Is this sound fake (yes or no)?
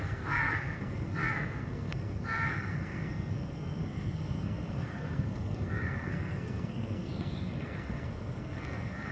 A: yes